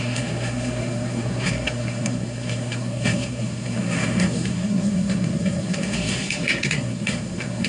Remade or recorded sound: remade